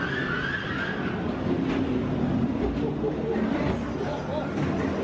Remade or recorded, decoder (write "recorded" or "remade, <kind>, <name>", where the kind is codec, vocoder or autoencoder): recorded